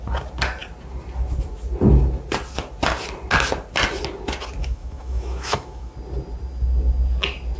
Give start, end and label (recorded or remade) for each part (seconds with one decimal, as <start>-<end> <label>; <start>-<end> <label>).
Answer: 0.0-4.6 recorded; 4.6-5.9 remade; 5.9-7.6 recorded